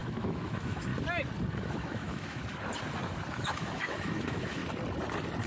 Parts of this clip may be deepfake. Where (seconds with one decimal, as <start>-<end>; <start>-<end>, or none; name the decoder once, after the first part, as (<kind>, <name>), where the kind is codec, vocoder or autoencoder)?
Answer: 0.0-0.9 (autoencoder, DAC-VAE); 1.6-2.4; 3.3-4.6